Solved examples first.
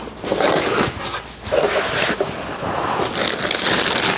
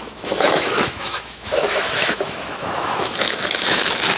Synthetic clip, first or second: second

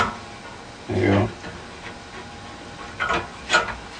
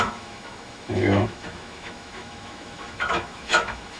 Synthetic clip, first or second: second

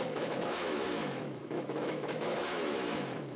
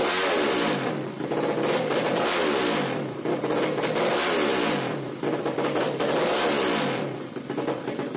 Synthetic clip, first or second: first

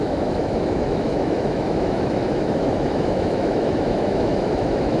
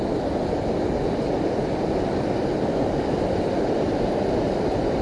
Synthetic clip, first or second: first